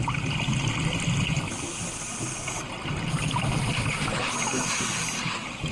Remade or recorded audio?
recorded